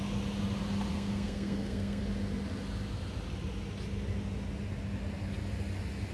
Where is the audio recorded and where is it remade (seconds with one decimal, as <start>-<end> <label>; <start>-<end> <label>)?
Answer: 0.0-0.9 recorded; 0.9-2.0 remade; 2.0-6.1 recorded